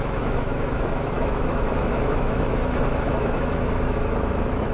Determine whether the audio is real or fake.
fake